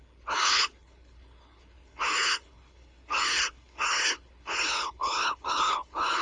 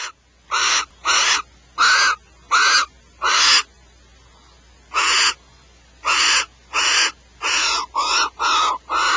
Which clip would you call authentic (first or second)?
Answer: second